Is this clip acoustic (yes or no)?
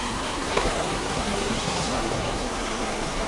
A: no